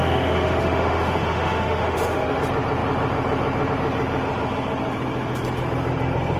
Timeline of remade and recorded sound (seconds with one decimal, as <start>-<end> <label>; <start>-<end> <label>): 0.0-2.4 remade; 2.4-6.4 recorded